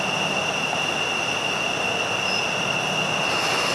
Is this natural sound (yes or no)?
yes